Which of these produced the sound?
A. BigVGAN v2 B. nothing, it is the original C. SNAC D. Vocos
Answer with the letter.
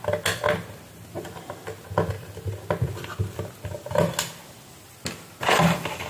B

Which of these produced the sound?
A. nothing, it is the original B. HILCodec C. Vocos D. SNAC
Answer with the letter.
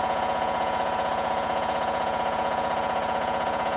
C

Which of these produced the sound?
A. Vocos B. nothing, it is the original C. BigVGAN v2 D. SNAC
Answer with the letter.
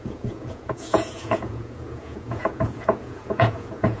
A